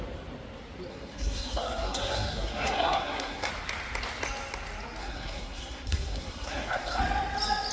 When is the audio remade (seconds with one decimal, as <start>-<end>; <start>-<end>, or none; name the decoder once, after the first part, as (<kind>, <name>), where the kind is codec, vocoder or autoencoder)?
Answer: 0.9-3.5 (codec, SNAC); 5.0-7.0